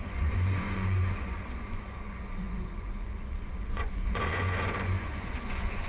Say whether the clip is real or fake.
fake